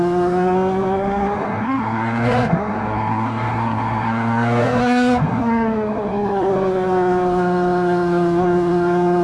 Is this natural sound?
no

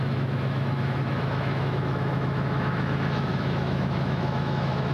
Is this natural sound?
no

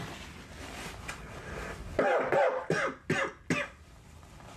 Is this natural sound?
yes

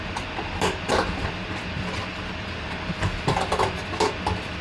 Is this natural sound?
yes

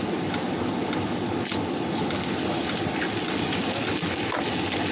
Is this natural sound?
yes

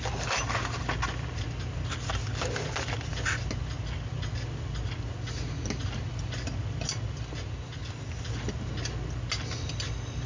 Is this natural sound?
yes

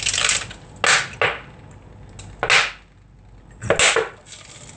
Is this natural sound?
yes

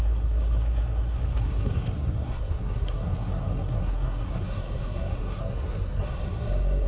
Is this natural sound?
no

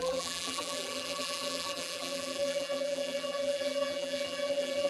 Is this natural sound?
no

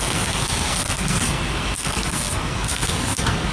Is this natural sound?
no